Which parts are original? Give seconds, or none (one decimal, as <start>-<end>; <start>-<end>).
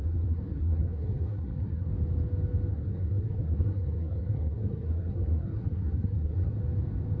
1.9-2.7; 6.6-7.2